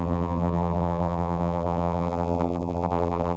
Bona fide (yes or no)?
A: no